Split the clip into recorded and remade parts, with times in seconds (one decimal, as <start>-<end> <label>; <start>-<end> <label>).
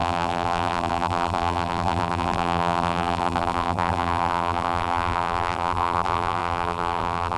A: 0.0-7.4 remade